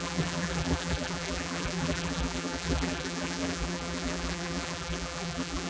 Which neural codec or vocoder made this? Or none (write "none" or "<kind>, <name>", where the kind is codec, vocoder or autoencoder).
vocoder, BigVGAN v2